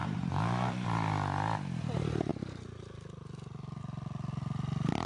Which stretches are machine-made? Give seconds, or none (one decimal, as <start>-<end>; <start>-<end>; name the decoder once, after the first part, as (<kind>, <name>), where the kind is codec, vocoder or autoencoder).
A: 0.0-0.9 (vocoder, BigVGAN v2)